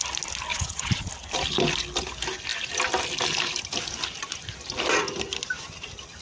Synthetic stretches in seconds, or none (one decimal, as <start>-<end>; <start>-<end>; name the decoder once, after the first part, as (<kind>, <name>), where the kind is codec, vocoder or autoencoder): 0.5-1.1 (vocoder, Vocos)